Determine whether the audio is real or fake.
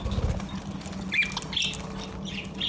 real